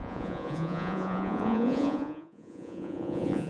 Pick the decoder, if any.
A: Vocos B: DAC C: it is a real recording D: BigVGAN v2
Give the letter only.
A